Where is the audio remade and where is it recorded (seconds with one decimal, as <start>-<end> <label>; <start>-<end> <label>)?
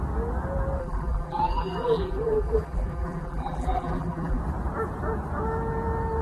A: 0.0-0.8 recorded; 0.8-4.4 remade; 4.4-6.2 recorded